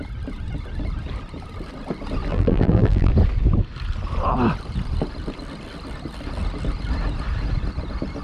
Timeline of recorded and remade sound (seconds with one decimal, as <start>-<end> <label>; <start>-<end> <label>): 0.0-2.3 recorded; 2.3-3.1 remade; 3.1-8.2 recorded